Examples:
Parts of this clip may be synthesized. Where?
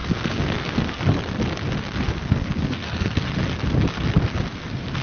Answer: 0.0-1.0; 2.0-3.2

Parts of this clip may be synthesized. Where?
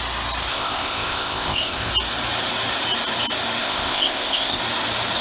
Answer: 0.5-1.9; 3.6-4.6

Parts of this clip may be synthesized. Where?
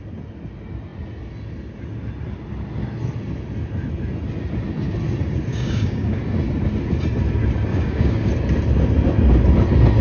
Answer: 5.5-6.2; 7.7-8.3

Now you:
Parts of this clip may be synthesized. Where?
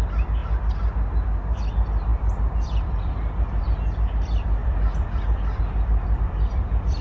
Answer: 0.0-0.4; 1.7-7.0